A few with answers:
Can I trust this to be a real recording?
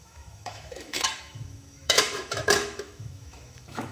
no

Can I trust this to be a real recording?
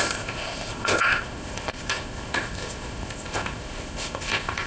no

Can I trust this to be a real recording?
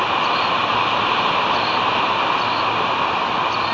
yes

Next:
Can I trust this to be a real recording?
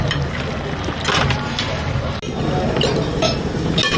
yes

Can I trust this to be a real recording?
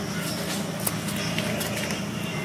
yes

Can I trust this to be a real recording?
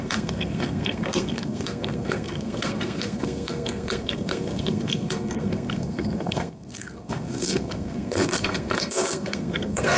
no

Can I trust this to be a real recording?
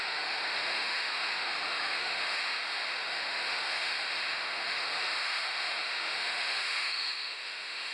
no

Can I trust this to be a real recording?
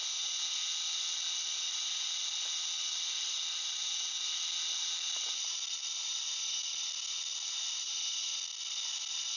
yes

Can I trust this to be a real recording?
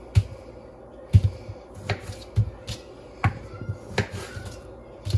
yes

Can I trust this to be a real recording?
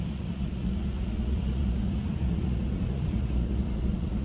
no